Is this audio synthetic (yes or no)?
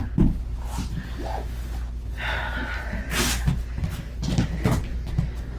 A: no